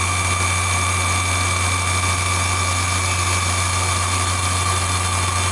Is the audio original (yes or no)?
yes